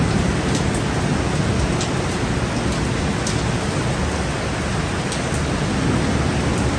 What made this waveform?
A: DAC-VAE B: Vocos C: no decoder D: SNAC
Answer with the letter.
C